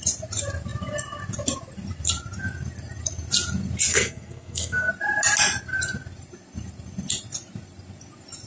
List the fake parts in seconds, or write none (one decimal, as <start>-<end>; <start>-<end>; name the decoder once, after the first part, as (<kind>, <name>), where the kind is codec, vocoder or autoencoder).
3.9-4.9 (codec, SNAC)